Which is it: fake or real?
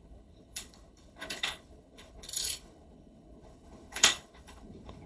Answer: fake